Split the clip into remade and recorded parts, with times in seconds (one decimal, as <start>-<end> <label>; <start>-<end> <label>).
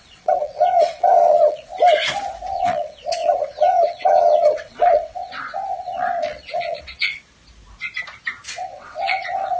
0.0-1.7 remade; 1.7-2.5 recorded; 2.5-7.2 remade; 7.2-8.5 recorded; 8.5-9.6 remade